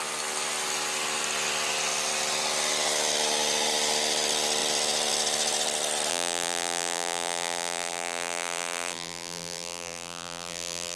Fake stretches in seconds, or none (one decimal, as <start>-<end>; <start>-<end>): 6.1-11.0